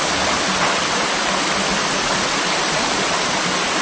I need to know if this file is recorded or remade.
recorded